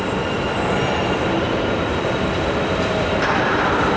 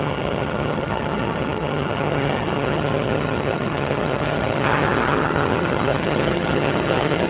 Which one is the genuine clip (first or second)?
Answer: first